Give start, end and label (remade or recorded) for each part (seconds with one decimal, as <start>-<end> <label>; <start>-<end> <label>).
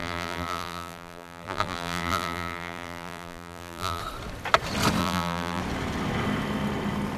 0.0-4.0 remade; 4.0-5.0 recorded; 5.0-5.6 remade; 5.6-7.2 recorded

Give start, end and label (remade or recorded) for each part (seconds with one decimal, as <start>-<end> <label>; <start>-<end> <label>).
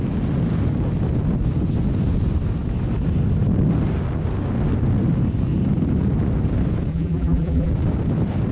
0.0-6.9 recorded; 6.9-7.7 remade; 7.7-8.5 recorded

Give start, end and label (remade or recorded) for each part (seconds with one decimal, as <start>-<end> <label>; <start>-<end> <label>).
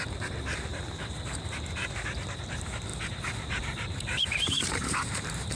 0.0-2.9 recorded; 2.9-5.5 remade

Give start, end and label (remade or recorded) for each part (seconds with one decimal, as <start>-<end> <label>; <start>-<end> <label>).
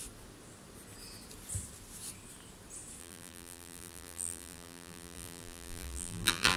0.0-3.0 recorded; 3.0-6.6 remade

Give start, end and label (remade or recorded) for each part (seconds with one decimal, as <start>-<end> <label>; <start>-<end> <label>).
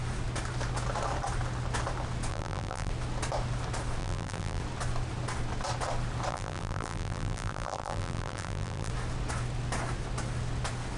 0.0-2.3 recorded; 2.3-2.9 remade; 2.9-4.0 recorded; 4.0-4.6 remade; 4.6-6.3 recorded; 6.3-8.9 remade; 8.9-11.0 recorded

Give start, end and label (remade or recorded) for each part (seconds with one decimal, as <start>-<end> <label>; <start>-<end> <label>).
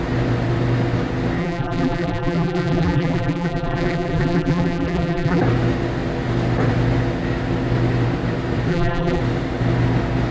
0.0-1.4 recorded; 1.4-5.4 remade; 5.4-8.7 recorded; 8.7-9.2 remade; 9.2-10.3 recorded